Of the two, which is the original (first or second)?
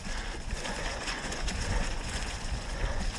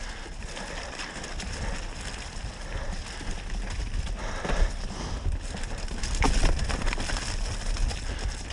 second